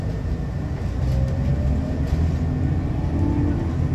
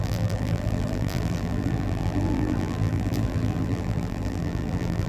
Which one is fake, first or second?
second